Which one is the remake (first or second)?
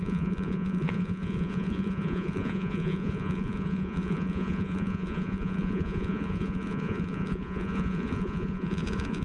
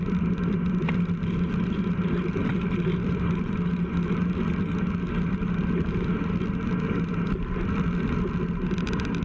first